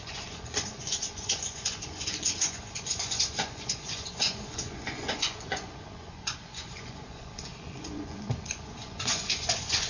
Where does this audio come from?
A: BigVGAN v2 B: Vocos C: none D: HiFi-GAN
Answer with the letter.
B